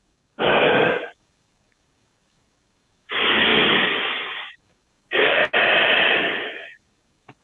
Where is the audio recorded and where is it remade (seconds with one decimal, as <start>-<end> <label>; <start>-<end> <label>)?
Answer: 0.0-5.4 remade; 5.4-6.2 recorded; 6.2-7.4 remade